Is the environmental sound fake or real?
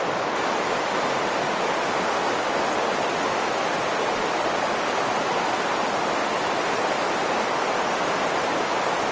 real